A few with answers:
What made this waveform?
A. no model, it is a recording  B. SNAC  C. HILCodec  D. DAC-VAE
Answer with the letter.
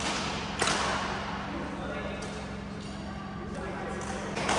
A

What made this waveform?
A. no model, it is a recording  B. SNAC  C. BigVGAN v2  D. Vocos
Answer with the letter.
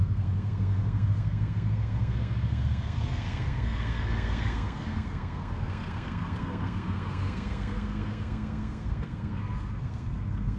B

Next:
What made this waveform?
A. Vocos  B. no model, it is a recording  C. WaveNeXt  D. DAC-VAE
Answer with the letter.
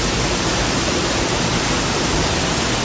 B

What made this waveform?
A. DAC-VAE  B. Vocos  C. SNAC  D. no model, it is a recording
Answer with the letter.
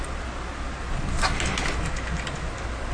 D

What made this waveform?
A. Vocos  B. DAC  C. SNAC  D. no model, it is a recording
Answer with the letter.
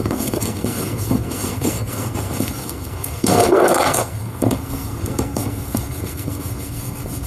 C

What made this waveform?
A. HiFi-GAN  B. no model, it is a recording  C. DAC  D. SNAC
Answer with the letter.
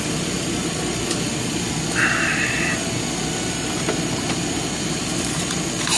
B